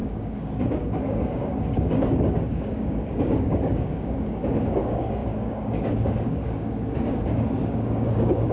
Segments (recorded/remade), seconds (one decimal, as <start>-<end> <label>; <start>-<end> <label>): 0.0-8.5 remade